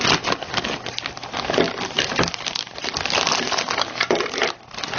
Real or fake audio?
real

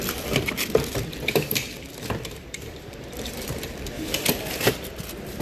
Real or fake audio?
fake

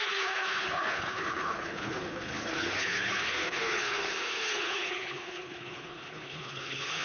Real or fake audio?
fake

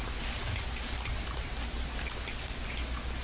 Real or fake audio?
real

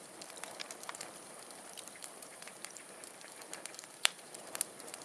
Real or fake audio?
fake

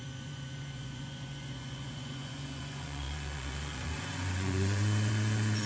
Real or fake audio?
fake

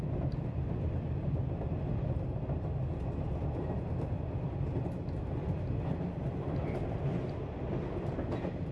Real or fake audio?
real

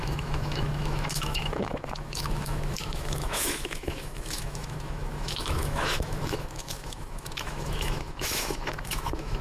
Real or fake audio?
fake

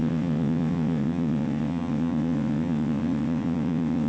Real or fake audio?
fake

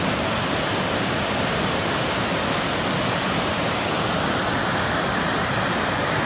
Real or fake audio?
real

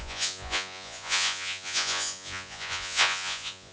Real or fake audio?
fake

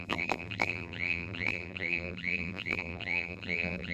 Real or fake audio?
fake